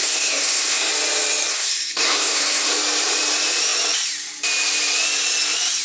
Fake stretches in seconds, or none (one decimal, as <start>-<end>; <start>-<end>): 0.0-0.9; 1.5-2.7